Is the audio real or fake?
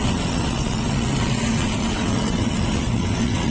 fake